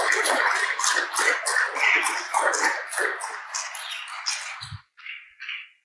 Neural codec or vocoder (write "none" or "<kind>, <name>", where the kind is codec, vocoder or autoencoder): none